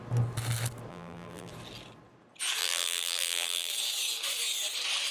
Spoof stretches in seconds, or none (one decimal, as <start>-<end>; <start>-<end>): 0.9-1.5; 2.6-3.7